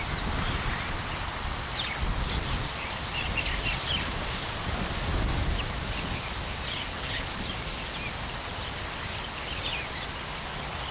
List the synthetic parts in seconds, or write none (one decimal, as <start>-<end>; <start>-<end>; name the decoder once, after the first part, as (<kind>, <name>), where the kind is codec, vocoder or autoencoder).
6.9-7.4 (codec, HILCodec)

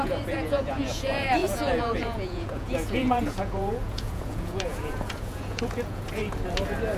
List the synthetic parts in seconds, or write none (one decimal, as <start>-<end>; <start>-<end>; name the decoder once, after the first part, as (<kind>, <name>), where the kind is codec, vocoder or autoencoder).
0.0-6.2 (vocoder, Vocos)

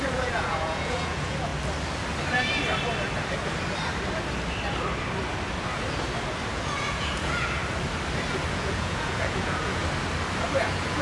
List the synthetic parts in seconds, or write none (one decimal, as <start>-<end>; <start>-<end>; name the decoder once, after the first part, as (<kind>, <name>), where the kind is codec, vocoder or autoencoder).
0.0-1.5 (vocoder, Vocos); 6.5-7.6; 8.5-9.8; 10.6-11.0

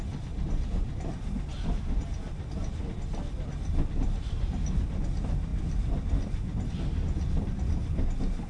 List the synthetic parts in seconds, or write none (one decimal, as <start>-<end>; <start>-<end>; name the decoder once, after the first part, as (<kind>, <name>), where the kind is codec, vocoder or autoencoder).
none

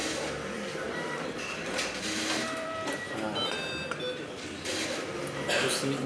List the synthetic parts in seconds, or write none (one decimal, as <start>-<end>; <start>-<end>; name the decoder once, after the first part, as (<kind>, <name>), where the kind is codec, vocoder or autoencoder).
0.0-6.1 (vocoder, BigVGAN v2)

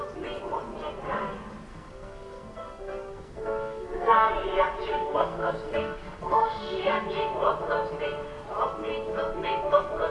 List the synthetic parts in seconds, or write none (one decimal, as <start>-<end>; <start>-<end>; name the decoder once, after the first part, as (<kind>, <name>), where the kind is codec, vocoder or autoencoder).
1.7-4.3 (codec, SNAC); 4.9-7.0